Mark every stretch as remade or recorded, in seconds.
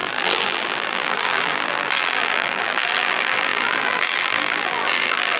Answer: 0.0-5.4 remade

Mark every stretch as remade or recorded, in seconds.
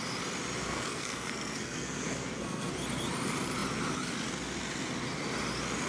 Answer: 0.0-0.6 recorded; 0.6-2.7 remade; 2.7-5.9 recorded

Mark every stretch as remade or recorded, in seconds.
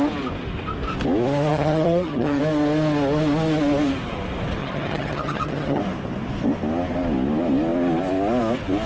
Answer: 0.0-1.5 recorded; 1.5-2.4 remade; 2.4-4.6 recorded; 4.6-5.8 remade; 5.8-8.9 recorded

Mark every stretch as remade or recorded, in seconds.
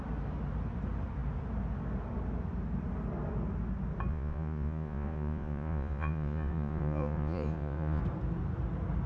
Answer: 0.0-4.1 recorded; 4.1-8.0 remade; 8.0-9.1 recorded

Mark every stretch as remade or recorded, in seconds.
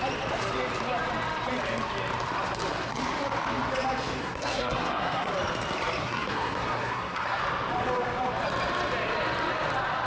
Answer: 0.0-4.2 recorded; 4.2-5.3 remade; 5.3-6.0 recorded; 6.0-7.4 remade; 7.4-10.1 recorded